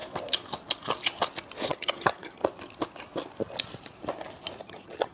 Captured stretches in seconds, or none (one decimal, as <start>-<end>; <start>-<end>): 0.0-1.7; 2.4-4.6

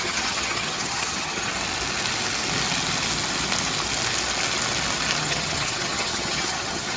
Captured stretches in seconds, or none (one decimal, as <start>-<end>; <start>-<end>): 1.5-5.2